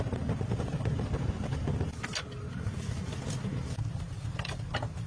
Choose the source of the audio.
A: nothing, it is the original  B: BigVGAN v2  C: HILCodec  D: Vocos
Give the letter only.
A